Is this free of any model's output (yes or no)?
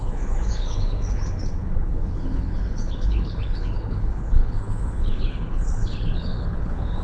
no